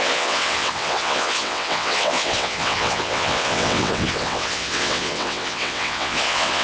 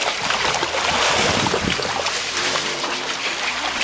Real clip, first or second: second